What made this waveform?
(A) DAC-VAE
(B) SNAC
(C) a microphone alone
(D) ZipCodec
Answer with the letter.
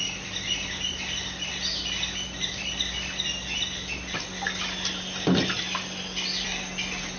C